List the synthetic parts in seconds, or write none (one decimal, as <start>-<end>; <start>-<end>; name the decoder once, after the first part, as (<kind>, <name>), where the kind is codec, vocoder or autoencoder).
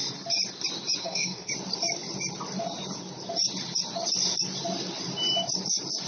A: 1.0-1.5 (codec, SNAC)